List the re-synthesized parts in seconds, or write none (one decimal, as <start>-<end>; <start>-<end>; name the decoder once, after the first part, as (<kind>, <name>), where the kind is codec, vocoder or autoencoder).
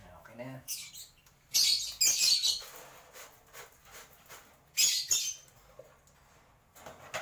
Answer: 0.0-0.9 (autoencoder, DAC-VAE)